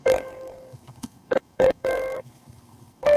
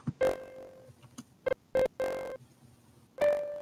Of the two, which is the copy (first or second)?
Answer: first